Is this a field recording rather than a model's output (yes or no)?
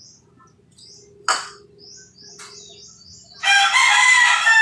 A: yes